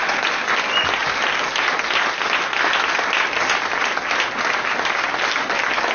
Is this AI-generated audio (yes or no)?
no